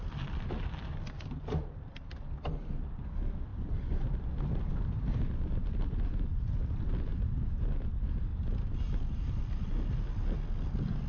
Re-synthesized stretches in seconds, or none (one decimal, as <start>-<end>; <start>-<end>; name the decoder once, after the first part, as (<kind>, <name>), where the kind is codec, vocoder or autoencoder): none